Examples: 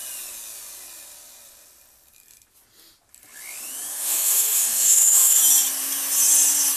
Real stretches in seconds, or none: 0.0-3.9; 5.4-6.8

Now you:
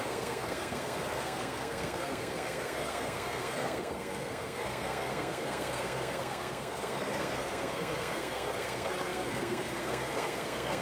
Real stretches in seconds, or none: none